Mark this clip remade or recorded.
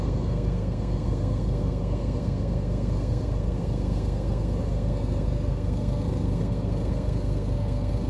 remade